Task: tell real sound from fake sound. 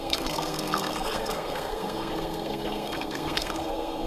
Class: fake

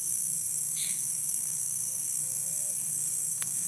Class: fake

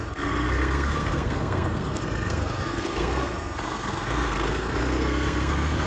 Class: fake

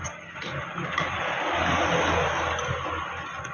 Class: real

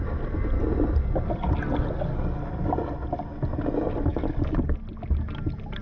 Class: real